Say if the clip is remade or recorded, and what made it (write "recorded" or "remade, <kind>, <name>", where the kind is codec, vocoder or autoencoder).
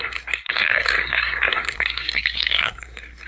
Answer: remade, codec, SNAC